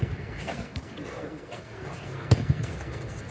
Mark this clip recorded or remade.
remade